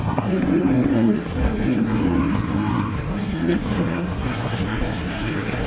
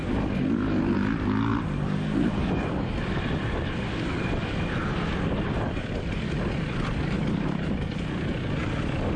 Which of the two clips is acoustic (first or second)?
second